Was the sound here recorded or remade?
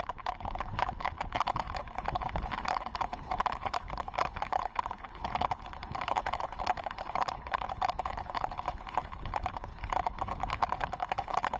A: remade